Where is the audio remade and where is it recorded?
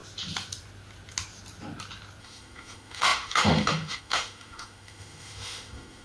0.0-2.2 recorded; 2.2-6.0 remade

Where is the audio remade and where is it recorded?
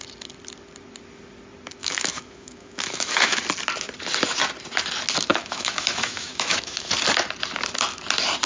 0.0-1.8 recorded; 1.8-3.4 remade; 3.4-5.3 recorded; 5.3-6.9 remade; 6.9-8.5 recorded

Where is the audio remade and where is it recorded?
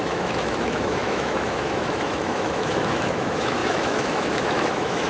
0.0-5.1 remade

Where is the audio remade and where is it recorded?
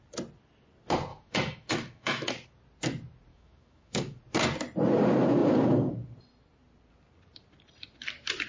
0.0-1.1 recorded; 1.1-2.3 remade; 2.3-3.3 recorded; 3.3-4.2 remade; 4.2-8.5 recorded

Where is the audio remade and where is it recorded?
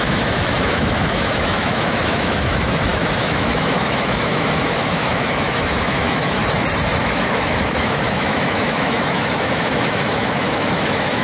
0.0-6.4 remade; 6.4-7.0 recorded; 7.0-11.2 remade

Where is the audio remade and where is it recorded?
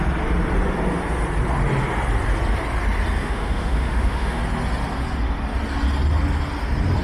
0.0-3.2 recorded; 3.2-4.4 remade; 4.4-7.0 recorded